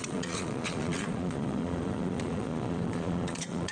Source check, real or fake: fake